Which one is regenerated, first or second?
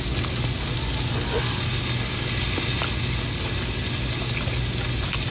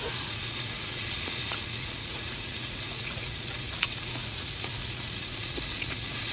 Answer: second